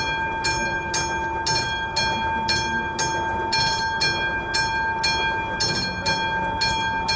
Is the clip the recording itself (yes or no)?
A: yes